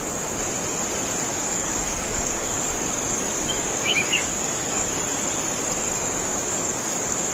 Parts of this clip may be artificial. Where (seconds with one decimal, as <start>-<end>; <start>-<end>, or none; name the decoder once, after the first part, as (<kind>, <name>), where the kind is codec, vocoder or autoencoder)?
1.3-4.9 (codec, DAC); 6.3-7.3